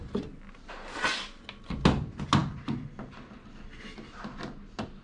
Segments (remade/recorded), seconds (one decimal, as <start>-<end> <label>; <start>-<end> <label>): 0.0-5.0 recorded